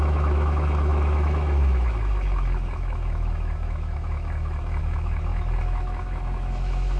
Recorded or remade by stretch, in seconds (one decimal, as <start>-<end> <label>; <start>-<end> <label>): 0.0-7.0 remade